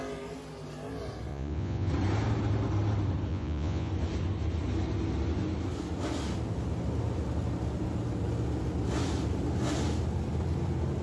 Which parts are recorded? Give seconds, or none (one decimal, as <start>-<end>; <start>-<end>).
0.0-1.3; 1.9-3.3; 3.9-11.0